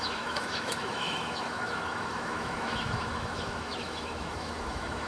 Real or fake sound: fake